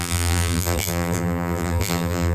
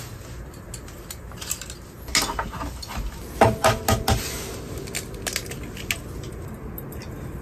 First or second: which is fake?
first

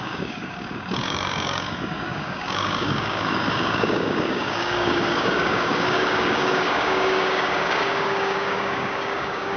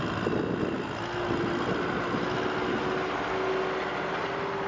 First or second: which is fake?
first